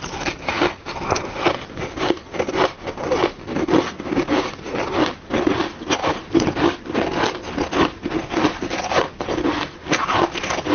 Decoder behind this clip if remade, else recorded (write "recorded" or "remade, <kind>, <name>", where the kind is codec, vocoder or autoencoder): recorded